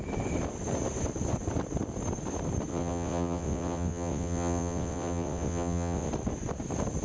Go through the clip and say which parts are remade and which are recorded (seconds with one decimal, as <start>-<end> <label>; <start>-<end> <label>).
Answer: 0.0-2.7 recorded; 2.7-6.1 remade; 6.1-7.0 recorded